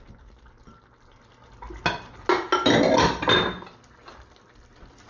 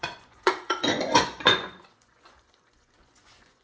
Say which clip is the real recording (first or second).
first